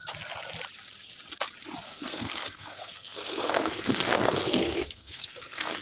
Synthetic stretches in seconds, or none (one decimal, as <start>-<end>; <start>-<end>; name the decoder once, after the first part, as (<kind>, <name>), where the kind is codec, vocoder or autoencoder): 1.9-5.8 (codec, SNAC)